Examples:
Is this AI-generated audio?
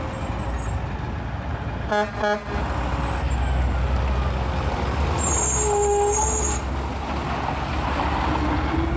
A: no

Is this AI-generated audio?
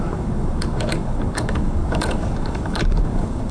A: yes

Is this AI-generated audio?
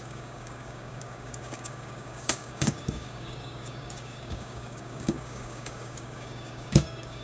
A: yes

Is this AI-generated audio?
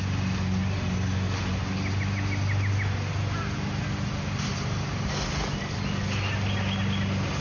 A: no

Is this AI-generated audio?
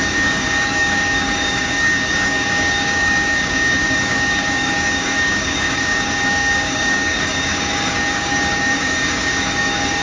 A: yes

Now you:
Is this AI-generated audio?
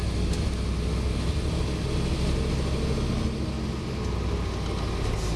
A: no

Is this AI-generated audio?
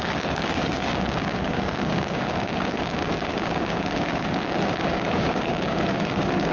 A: yes